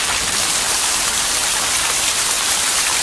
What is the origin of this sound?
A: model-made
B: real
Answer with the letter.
A